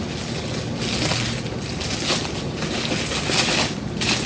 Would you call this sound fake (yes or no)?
no